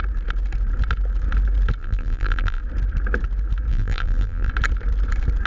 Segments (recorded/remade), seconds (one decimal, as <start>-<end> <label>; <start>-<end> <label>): 0.0-1.8 recorded; 1.8-2.6 remade; 2.6-3.7 recorded; 3.7-4.5 remade; 4.5-5.5 recorded